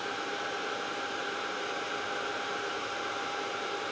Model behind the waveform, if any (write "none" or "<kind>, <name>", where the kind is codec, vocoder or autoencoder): vocoder, BigVGAN v2